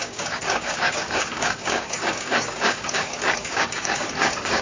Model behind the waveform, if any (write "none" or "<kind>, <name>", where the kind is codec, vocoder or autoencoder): codec, DAC